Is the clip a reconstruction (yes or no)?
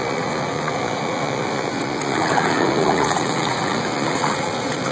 yes